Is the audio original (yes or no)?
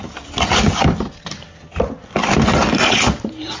yes